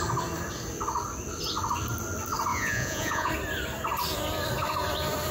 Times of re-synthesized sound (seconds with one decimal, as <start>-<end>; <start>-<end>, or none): 2.5-3.3